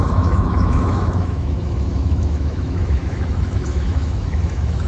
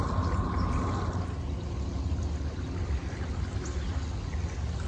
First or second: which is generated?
first